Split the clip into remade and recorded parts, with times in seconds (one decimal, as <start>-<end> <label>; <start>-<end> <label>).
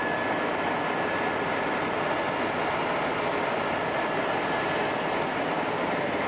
0.0-6.3 recorded